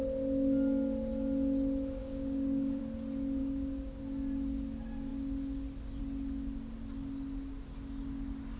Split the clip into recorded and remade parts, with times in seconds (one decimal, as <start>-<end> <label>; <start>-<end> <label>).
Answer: 0.0-2.0 recorded; 2.0-2.8 remade; 2.8-3.4 recorded; 3.4-4.0 remade; 4.0-8.6 recorded